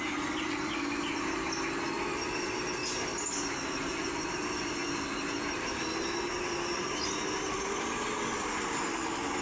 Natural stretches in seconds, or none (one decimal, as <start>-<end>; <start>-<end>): 0.0-9.4